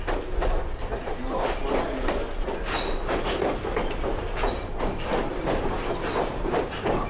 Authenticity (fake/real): real